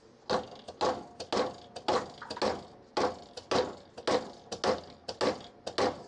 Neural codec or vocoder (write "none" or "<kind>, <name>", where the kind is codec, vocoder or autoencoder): none